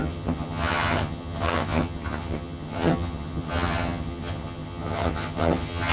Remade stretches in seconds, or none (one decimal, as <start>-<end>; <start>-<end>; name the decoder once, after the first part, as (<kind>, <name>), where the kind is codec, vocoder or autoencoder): 0.0-5.9 (vocoder, HiFi-GAN)